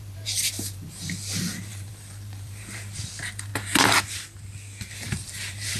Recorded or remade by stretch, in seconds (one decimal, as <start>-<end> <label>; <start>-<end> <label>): 0.0-3.5 remade; 3.5-4.9 recorded; 4.9-5.8 remade